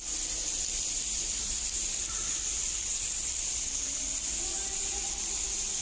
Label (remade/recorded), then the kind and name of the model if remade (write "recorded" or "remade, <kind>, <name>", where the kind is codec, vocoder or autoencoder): recorded